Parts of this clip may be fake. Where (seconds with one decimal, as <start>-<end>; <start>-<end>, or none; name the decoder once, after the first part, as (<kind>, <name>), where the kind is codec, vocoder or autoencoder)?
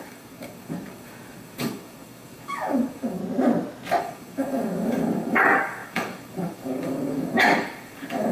0.0-3.2 (codec, DAC); 4.0-8.3